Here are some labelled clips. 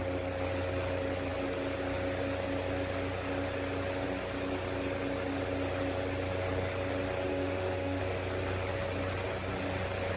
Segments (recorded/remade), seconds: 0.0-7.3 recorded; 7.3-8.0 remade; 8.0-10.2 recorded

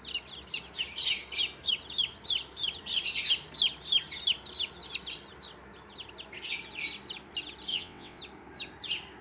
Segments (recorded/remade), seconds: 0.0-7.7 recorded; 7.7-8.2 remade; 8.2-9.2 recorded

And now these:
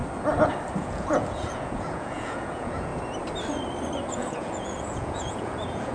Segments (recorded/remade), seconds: 0.0-0.8 recorded; 0.8-2.9 remade; 2.9-4.1 recorded; 4.1-5.9 remade

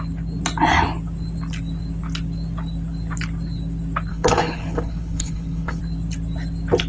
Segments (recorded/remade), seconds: 0.0-4.1 recorded; 4.1-5.8 remade; 5.8-6.9 recorded

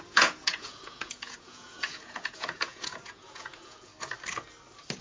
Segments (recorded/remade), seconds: 0.0-3.9 remade; 3.9-5.0 recorded

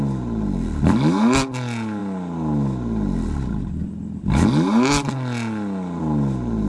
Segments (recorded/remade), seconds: 0.0-6.7 recorded

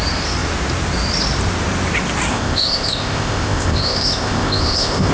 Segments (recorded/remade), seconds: 0.0-2.3 recorded; 2.3-5.1 remade